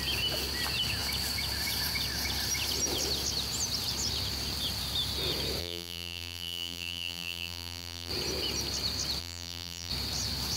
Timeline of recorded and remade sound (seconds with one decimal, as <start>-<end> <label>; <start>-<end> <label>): 0.0-5.6 recorded; 5.6-8.1 remade; 8.1-9.2 recorded; 9.2-9.9 remade; 9.9-10.6 recorded